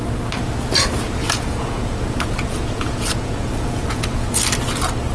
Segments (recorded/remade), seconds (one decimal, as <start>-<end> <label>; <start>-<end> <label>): 0.0-1.2 recorded; 1.2-4.3 remade; 4.3-5.1 recorded